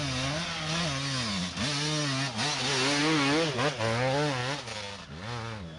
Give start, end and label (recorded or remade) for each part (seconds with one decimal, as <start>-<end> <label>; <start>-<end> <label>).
0.0-5.8 recorded